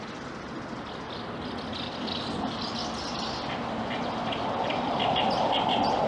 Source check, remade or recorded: recorded